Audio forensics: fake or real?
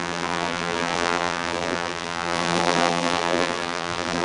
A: fake